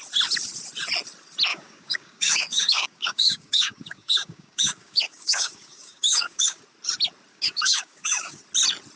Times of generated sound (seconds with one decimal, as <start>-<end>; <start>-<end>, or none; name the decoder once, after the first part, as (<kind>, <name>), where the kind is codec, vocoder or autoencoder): 1.5-6.6 (codec, DAC); 7.3-8.4